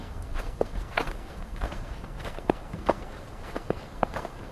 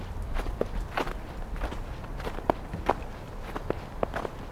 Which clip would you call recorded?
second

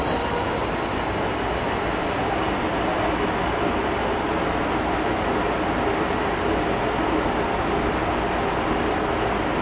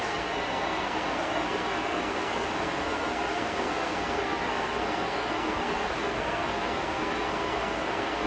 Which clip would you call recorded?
first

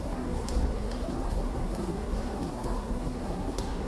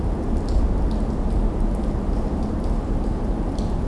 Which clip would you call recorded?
second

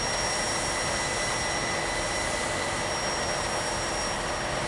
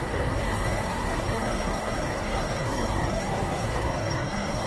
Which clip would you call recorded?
first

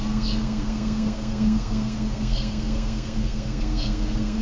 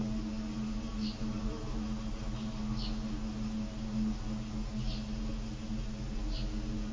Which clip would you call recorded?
second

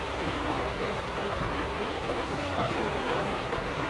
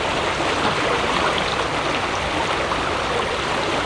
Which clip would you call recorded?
second